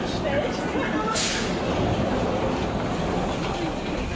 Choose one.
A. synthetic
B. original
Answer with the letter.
B